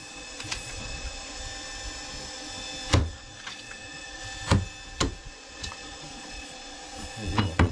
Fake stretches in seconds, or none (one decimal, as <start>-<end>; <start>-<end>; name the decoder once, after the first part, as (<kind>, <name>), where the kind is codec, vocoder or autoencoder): 0.0-1.4 (vocoder, Vocos); 3.0-4.2; 5.2-7.7